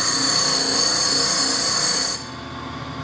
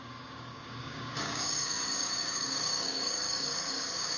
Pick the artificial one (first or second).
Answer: second